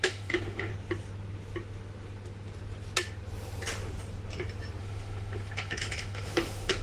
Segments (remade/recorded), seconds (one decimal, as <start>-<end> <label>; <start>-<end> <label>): 0.0-0.7 remade; 0.7-4.8 recorded; 4.8-6.8 remade